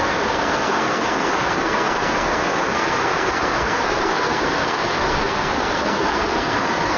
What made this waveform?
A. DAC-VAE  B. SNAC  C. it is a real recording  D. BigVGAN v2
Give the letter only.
B